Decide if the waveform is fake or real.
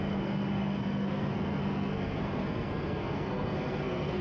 fake